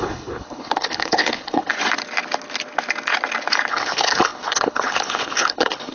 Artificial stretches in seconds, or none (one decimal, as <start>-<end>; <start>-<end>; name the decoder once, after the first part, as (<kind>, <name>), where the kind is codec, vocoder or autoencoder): 0.0-1.7 (codec, HILCodec); 3.7-5.9